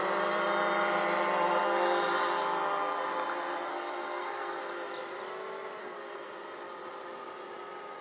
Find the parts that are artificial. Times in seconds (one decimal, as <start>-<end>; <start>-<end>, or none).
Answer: 3.7-4.6; 5.8-6.3